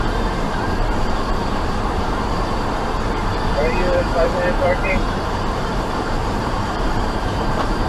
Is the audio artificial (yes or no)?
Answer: yes